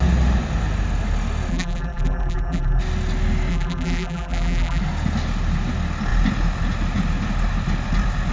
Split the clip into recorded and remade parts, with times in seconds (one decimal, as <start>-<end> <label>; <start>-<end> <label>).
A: 0.0-1.5 recorded; 1.5-2.8 remade; 2.8-3.5 recorded; 3.5-4.8 remade; 4.8-8.3 recorded